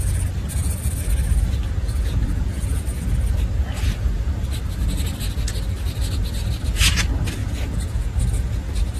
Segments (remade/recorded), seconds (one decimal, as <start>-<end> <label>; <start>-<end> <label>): 0.0-1.8 recorded; 1.8-2.8 remade; 2.8-7.4 recorded; 7.4-8.6 remade; 8.6-9.0 recorded